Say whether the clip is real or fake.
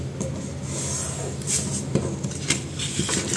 real